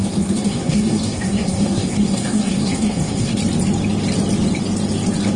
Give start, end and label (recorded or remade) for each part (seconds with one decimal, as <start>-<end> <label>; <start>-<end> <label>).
0.0-3.4 remade; 3.4-5.4 recorded